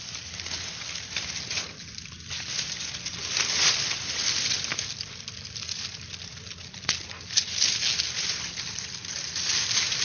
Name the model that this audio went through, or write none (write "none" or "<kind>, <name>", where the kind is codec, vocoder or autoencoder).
none